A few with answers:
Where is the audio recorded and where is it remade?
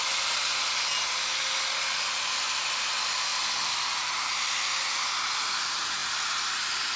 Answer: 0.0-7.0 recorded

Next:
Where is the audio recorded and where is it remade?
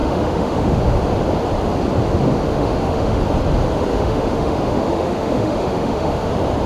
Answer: 0.0-0.8 remade; 0.8-2.5 recorded; 2.5-3.2 remade; 3.2-3.9 recorded; 3.9-6.3 remade; 6.3-6.7 recorded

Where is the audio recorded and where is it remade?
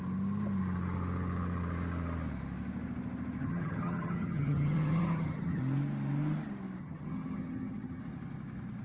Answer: 0.0-3.4 recorded; 3.4-5.6 remade; 5.6-6.8 recorded; 6.8-8.0 remade; 8.0-8.8 recorded